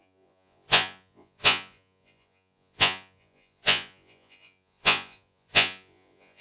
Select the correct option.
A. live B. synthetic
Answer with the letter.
B